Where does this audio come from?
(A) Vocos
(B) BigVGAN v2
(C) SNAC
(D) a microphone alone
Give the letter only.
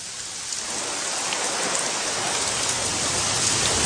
D